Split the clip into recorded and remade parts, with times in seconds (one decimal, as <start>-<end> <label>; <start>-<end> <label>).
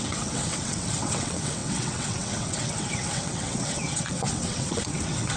0.0-5.4 remade